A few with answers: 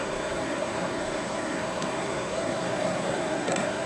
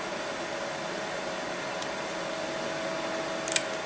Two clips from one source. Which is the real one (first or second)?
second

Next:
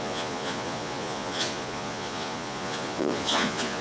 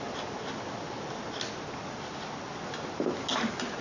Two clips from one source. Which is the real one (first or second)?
second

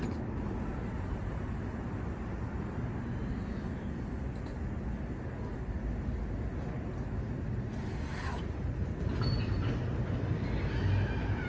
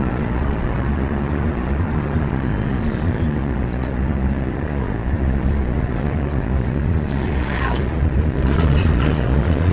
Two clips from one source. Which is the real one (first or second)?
first